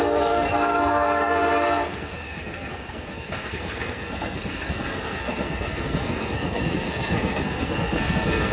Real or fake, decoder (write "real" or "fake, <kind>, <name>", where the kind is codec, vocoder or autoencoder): fake, codec, SNAC